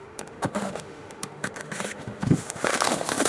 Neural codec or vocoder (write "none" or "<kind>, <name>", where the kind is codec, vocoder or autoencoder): autoencoder, DAC-VAE